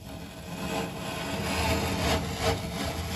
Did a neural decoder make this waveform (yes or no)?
no